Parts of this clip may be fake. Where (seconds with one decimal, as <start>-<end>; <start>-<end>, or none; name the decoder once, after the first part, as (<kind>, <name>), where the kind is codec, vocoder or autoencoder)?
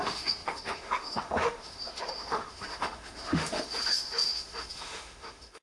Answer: 0.0-5.6 (autoencoder, DAC-VAE)